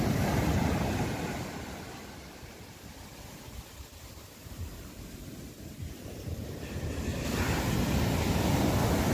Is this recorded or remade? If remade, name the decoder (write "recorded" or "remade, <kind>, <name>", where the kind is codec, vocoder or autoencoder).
recorded